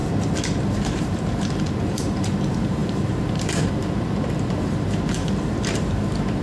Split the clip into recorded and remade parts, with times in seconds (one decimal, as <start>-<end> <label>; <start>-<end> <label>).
0.0-0.6 recorded; 0.6-6.4 remade